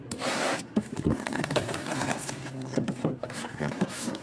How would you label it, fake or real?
fake